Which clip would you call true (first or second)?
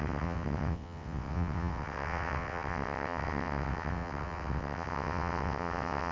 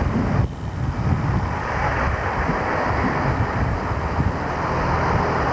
second